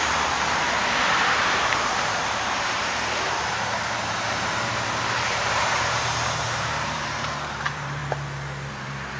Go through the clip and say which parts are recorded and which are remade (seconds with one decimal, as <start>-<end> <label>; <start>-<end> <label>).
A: 0.0-8.0 remade; 8.0-8.7 recorded; 8.7-9.2 remade